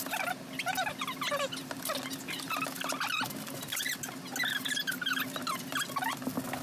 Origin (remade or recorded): recorded